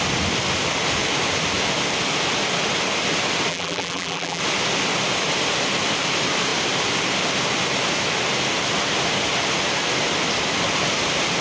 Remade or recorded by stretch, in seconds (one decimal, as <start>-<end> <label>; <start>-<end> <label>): 0.0-3.5 recorded; 3.5-4.4 remade; 4.4-11.4 recorded